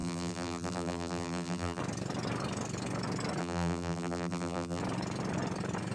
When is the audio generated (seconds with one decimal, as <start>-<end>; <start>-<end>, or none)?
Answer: 0.0-1.8; 3.4-4.8